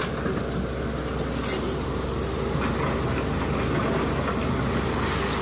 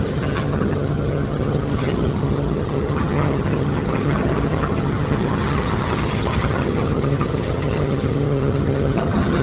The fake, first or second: second